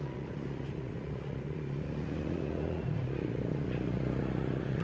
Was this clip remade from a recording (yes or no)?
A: yes